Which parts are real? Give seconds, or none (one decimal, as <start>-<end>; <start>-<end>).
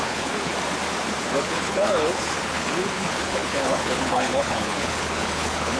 0.5-1.2